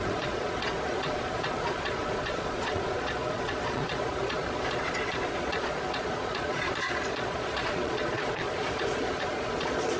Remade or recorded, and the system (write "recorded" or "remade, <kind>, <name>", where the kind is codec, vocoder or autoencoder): remade, vocoder, Vocos